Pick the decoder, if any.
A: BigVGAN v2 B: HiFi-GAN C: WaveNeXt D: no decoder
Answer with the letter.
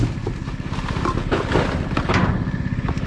D